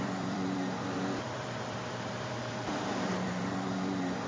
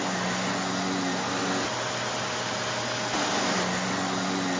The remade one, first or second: first